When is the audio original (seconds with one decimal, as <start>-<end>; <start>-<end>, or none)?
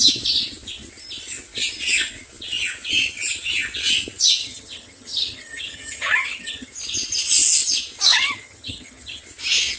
0.0-4.4; 6.7-8.1; 9.2-9.8